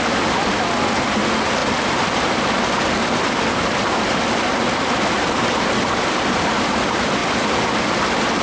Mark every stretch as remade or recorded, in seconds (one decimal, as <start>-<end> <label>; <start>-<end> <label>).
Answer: 0.0-8.4 recorded